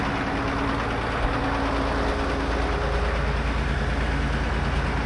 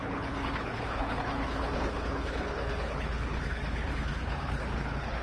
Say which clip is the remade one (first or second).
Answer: second